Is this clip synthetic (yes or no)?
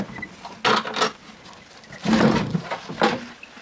no